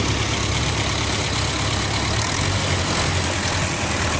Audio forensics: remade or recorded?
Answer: recorded